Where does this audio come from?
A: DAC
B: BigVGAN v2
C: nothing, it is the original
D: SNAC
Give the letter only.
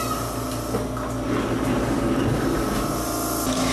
C